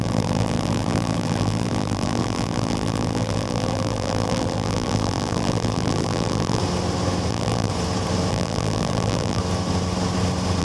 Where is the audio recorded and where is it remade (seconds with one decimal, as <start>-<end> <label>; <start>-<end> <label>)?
0.0-6.6 remade; 6.6-7.3 recorded; 7.3-7.7 remade; 7.7-8.3 recorded; 8.3-9.4 remade; 9.4-10.6 recorded